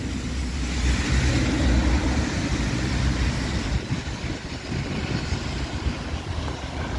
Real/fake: real